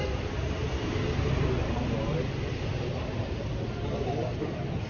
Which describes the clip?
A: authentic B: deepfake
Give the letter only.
A